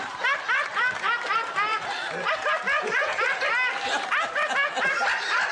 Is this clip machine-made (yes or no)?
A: no